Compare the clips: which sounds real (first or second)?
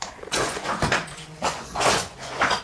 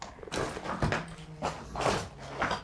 second